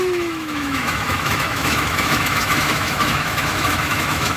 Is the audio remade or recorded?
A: remade